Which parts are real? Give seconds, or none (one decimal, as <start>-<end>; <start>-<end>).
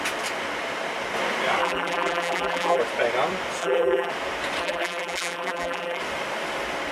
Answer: 0.0-1.6; 2.8-3.6; 4.1-4.6; 6.0-6.9